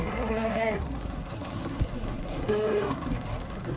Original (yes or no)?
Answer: no